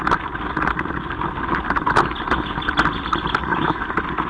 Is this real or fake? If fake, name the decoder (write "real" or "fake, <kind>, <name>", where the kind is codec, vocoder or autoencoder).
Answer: real